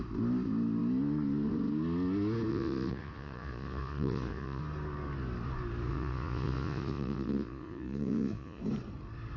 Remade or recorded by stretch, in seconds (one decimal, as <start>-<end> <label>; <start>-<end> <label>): 0.0-2.5 recorded; 2.5-4.6 remade; 4.6-5.9 recorded; 5.9-8.6 remade; 8.6-9.4 recorded